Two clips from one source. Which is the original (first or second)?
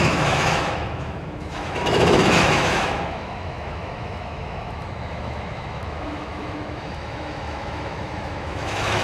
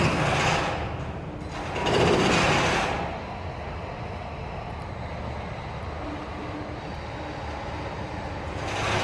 second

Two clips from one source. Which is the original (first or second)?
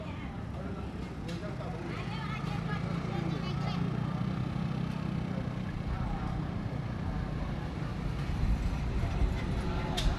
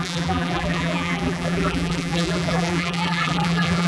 first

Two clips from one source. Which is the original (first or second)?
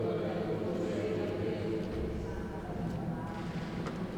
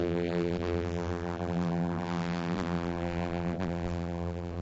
first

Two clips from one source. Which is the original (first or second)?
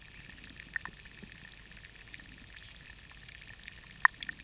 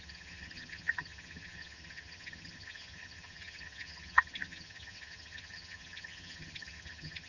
first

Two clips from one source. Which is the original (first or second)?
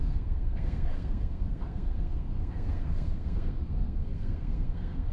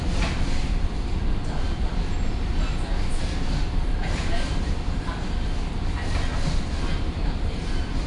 second